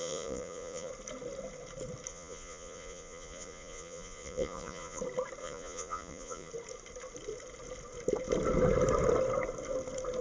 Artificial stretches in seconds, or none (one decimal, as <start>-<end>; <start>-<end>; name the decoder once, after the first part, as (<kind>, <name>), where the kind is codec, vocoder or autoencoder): 0.0-0.9 (vocoder, Vocos); 2.1-5.0; 5.4-6.5